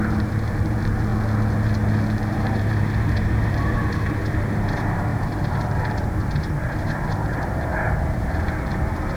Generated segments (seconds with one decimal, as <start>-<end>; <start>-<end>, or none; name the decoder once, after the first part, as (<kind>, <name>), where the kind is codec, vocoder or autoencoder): 0.0-1.1 (vocoder, BigVGAN v2); 2.3-9.2